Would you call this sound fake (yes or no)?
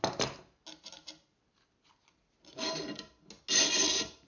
no